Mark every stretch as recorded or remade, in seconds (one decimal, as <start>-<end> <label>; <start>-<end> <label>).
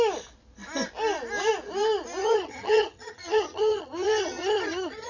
0.0-2.2 recorded; 2.2-5.1 remade